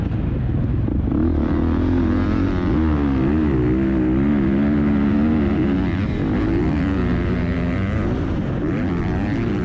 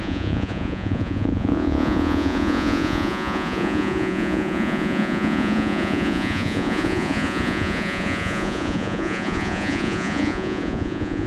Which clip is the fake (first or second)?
second